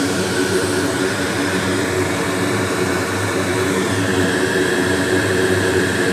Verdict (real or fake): fake